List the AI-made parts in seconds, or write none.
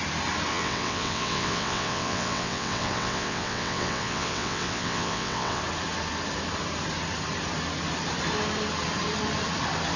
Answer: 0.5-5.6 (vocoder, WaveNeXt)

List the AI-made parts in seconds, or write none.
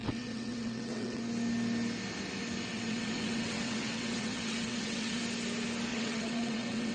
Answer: 0.0-1.2 (vocoder, WaveNeXt); 2.7-5.2; 5.9-6.9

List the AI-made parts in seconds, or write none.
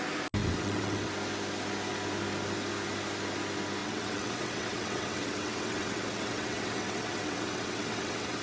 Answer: 0.4-1.1 (vocoder, WaveNeXt); 3.8-8.4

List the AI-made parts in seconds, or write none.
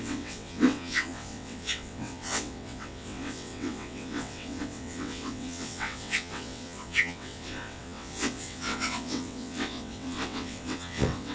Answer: 0.0-11.3 (vocoder, WaveNeXt)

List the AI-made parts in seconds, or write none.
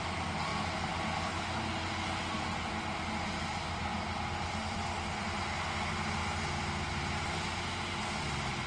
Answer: none